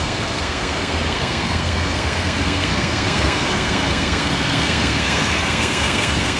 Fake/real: fake